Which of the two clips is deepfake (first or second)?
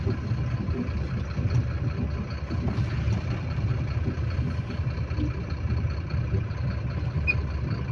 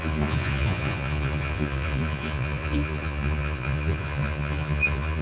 second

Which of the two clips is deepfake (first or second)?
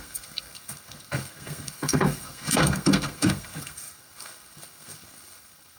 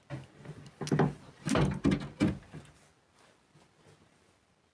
first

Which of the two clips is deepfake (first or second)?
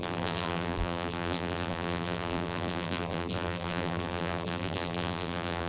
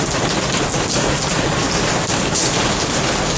first